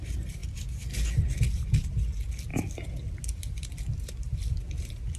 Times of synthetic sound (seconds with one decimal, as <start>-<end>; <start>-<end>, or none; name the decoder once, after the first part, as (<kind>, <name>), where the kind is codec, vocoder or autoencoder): none